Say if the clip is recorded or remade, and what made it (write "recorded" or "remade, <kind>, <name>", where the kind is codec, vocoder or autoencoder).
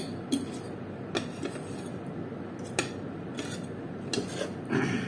recorded